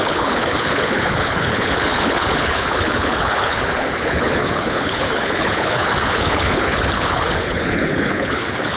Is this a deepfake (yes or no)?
yes